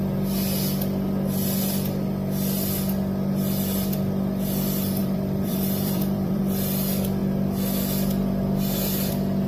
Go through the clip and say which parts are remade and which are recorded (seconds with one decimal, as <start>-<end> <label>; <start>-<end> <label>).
0.0-5.0 recorded; 5.0-6.4 remade; 6.4-9.5 recorded